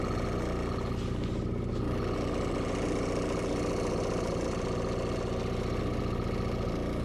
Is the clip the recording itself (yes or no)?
yes